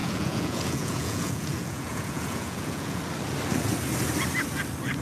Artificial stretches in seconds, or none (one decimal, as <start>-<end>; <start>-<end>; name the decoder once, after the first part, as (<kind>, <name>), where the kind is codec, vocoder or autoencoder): 0.0-3.0 (vocoder, Vocos)